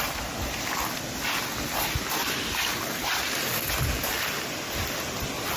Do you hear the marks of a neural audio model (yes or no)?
no